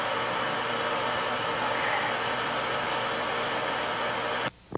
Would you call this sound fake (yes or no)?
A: no